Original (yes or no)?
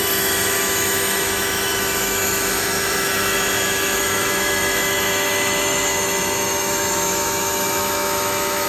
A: no